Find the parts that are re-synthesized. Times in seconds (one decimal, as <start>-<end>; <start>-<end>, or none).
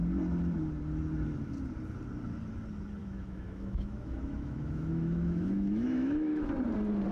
3.0-6.5